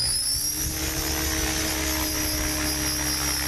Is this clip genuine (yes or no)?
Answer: yes